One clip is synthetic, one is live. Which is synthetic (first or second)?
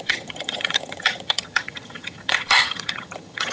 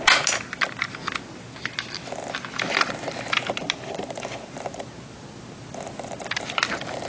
first